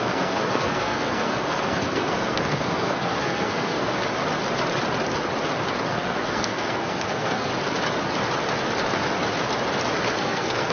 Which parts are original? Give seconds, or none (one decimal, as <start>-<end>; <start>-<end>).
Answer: 3.9-5.9; 7.5-10.1

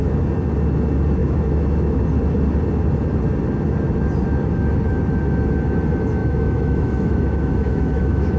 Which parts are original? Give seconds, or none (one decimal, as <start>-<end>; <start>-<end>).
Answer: 0.0-1.2; 2.0-6.2